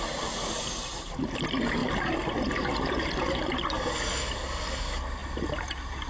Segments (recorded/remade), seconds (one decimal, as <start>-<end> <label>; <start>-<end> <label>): 0.0-6.1 recorded